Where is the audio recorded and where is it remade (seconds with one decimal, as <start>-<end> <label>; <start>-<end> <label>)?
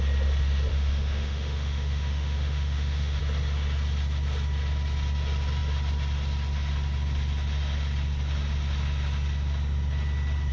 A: 0.0-0.7 recorded; 0.7-3.2 remade; 3.2-10.5 recorded